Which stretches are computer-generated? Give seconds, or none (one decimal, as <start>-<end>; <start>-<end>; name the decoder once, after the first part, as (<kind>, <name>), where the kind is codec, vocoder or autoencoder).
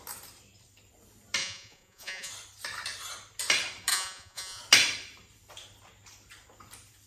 1.4-2.3 (vocoder, Vocos); 3.9-4.6